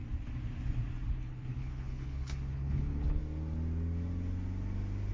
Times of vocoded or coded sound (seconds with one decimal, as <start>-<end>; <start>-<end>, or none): 1.1-3.2